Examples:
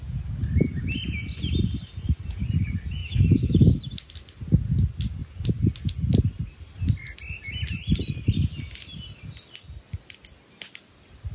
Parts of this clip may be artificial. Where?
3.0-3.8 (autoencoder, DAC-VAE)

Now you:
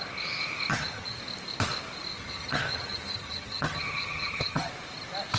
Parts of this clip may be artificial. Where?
0.7-1.2 (vocoder, HiFi-GAN); 2.1-4.7

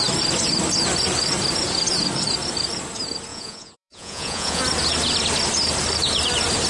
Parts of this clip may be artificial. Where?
3.3-4.6 (vocoder, Vocos)

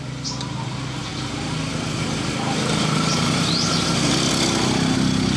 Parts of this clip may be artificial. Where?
none

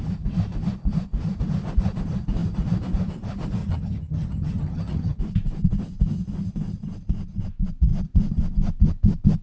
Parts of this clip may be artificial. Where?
3.6-5.2 (vocoder, HiFi-GAN)